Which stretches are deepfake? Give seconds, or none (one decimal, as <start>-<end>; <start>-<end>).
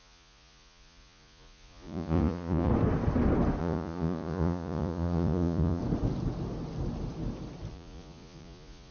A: 0.0-2.7; 3.6-5.8; 7.7-8.9